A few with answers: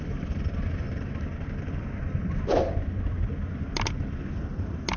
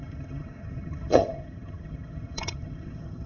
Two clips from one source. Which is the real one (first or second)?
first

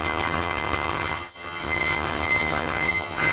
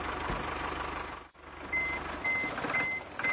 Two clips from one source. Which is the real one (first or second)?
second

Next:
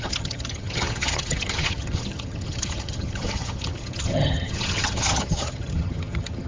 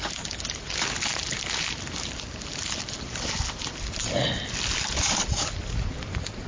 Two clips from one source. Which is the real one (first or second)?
second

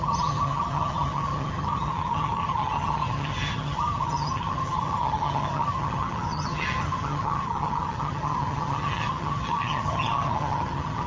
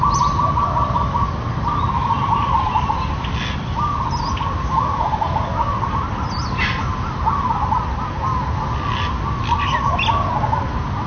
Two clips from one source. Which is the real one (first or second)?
second